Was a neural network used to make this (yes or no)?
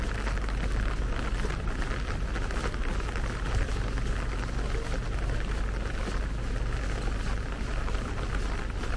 no